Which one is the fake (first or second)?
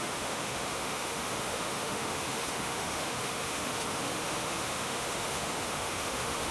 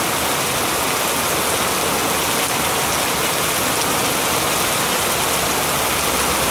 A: first